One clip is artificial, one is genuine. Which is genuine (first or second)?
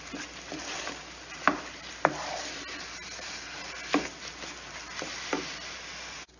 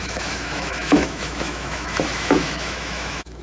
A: first